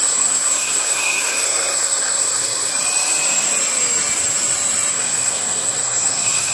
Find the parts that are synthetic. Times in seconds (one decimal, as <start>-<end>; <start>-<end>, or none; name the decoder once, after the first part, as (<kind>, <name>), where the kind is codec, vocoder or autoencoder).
0.0-2.7 (codec, SNAC); 4.9-6.5